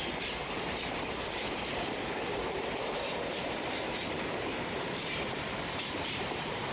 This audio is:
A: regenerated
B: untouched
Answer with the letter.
A